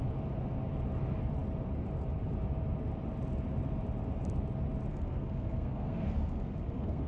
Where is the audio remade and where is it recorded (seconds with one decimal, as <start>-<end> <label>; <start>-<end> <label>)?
0.0-4.9 recorded; 4.9-7.1 remade